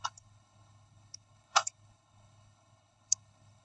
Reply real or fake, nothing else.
fake